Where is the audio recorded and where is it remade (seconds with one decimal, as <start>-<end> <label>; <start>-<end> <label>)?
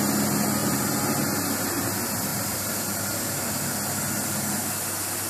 0.0-0.6 recorded; 0.6-1.1 remade; 1.1-2.3 recorded; 2.3-3.4 remade; 3.4-5.3 recorded